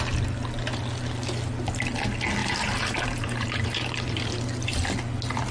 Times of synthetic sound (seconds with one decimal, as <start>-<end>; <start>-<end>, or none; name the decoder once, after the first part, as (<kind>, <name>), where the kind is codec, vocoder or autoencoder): 2.4-4.4 (vocoder, BigVGAN v2)

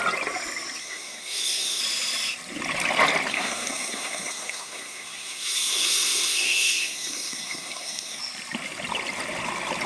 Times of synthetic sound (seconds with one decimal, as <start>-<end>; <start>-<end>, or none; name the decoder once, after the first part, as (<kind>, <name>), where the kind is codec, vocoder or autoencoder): 0.8-1.8 (codec, SNAC); 3.3-8.2

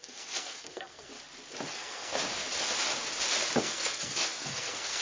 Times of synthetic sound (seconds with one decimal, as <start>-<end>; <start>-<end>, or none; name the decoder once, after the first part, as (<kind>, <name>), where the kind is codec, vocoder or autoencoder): 0.0-1.1 (codec, SNAC); 1.7-2.1; 3.6-5.0